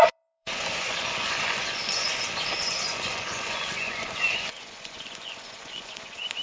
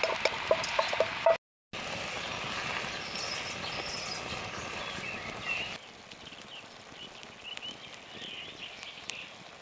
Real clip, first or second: second